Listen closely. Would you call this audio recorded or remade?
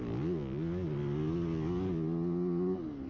recorded